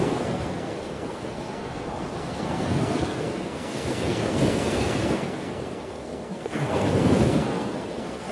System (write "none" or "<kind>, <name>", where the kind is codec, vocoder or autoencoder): codec, SNAC